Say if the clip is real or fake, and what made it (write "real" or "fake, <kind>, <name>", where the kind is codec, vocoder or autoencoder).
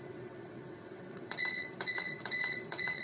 fake, vocoder, WaveNeXt